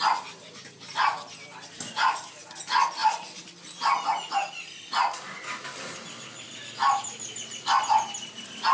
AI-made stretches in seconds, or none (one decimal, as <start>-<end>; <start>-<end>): none